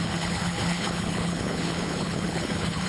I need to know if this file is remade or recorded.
remade